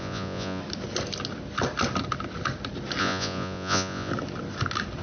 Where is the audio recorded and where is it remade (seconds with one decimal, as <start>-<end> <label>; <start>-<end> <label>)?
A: 0.0-0.6 remade; 0.6-3.0 recorded; 3.0-4.1 remade; 4.1-5.0 recorded